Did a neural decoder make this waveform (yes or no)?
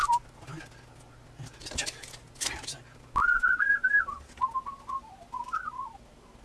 no